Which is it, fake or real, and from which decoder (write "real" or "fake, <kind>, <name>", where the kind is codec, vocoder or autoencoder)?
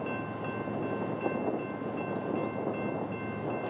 real